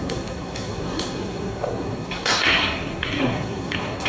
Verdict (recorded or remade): remade